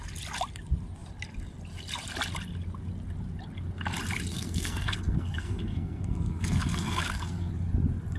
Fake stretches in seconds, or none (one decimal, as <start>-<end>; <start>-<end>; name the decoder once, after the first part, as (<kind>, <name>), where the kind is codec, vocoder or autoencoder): 4.3-7.5 (codec, SNAC)